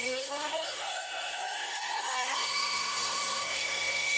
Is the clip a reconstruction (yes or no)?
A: yes